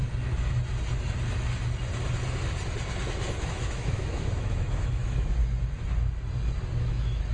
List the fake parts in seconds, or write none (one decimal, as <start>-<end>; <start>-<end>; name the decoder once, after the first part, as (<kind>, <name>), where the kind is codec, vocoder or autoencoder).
3.4-5.4 (autoencoder, DAC-VAE); 6.8-7.3